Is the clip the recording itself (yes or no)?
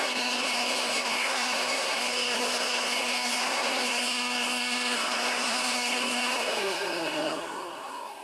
no